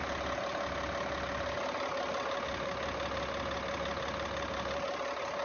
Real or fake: real